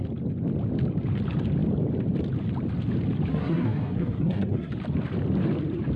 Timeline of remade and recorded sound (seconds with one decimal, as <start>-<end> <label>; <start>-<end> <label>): 0.0-3.3 recorded; 3.3-4.7 remade; 4.7-6.0 recorded